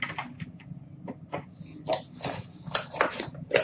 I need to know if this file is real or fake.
real